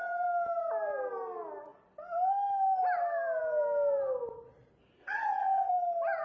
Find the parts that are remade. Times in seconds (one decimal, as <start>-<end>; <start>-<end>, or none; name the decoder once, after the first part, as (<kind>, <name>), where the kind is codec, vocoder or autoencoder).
5.0-5.7 (vocoder, WaveNeXt)